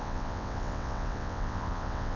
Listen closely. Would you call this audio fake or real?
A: fake